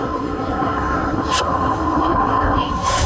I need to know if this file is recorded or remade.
remade